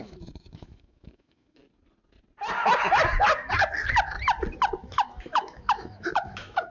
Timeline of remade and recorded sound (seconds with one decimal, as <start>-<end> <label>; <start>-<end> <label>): 0.0-1.6 remade; 1.6-4.8 recorded; 4.8-6.7 remade